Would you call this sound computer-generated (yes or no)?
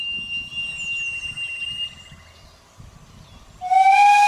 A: no